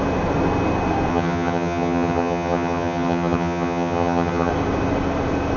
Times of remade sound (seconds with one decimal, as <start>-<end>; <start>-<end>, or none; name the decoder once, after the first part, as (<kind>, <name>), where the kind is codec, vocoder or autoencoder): 1.1-4.5 (vocoder, HiFi-GAN)